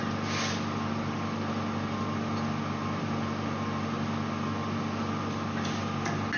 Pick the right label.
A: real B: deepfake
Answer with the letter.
A